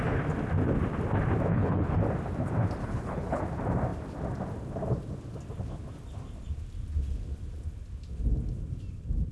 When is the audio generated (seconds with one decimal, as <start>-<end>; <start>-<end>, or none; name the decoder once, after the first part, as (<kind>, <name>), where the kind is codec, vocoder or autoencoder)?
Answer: 1.5-2.0 (codec, HILCodec); 2.8-3.4